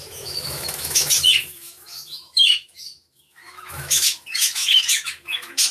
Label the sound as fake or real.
fake